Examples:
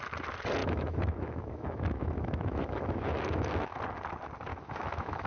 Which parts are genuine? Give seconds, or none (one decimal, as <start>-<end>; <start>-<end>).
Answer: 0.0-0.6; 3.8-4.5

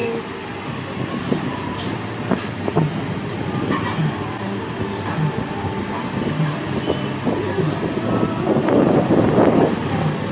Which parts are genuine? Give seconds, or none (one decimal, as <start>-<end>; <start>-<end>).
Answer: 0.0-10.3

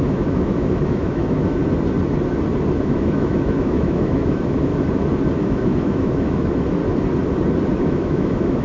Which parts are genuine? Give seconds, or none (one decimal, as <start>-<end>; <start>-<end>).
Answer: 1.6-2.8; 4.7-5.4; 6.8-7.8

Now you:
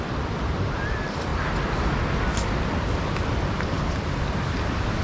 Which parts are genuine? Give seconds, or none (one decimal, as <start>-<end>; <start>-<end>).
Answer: 0.0-5.0